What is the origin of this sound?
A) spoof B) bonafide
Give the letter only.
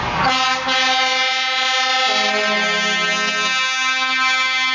B